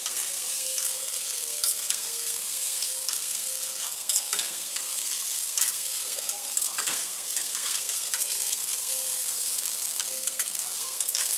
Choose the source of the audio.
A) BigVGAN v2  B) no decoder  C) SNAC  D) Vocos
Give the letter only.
C